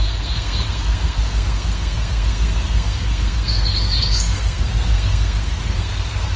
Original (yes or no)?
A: no